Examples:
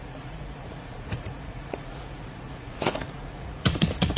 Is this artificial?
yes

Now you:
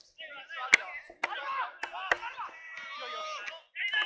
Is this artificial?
no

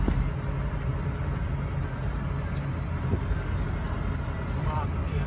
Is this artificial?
no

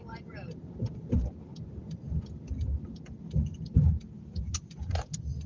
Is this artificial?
no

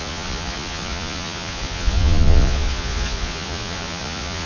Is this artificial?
yes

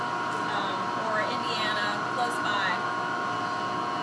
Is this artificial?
no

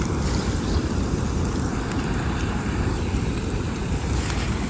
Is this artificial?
no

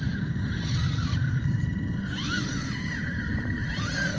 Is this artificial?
yes